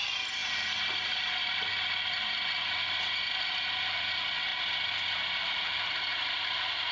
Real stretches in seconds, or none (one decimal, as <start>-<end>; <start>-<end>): 0.0-6.9